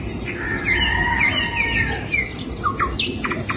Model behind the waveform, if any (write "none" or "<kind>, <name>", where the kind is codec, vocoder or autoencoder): none